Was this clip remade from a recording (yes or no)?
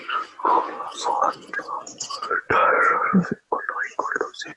yes